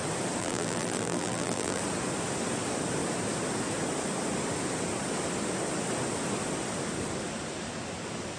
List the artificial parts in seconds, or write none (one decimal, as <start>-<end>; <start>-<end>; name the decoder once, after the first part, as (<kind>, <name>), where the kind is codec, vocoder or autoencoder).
0.4-1.8 (vocoder, BigVGAN v2)